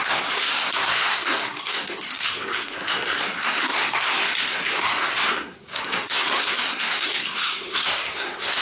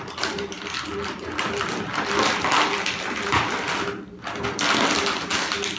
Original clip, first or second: second